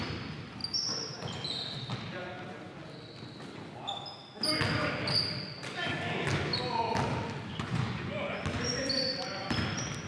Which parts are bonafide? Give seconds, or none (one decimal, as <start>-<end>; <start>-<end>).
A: 0.0-7.5; 8.4-10.1